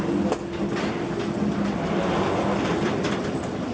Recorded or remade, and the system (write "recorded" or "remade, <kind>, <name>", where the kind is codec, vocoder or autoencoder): recorded